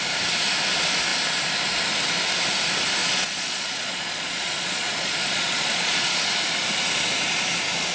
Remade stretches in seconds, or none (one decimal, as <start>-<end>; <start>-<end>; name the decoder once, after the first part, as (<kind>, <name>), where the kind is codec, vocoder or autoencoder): 3.0-6.2 (vocoder, Vocos)